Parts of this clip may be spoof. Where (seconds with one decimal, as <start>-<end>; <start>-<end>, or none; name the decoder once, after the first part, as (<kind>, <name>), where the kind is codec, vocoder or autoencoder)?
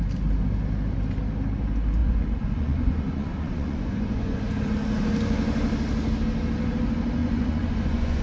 2.0-4.4 (vocoder, Vocos); 7.2-8.2